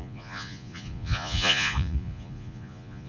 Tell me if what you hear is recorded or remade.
remade